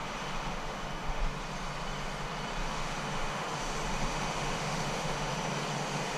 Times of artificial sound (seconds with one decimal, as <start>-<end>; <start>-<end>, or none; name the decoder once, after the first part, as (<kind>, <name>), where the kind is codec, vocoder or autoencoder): 0.0-1.2 (autoencoder, DAC-VAE); 2.6-5.3